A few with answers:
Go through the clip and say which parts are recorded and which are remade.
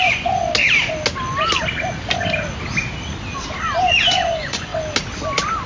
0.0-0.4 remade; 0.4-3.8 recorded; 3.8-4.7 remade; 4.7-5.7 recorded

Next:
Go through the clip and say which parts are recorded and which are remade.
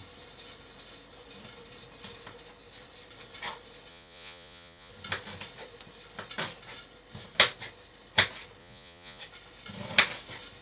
0.0-3.9 recorded; 3.9-4.9 remade; 4.9-8.6 recorded; 8.6-9.2 remade; 9.2-10.6 recorded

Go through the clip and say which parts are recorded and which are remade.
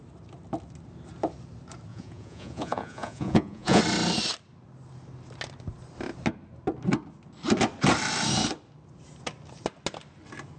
0.0-1.9 recorded; 1.9-3.8 remade; 3.8-10.6 recorded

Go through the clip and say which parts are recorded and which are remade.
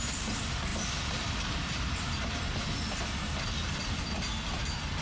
0.0-5.0 recorded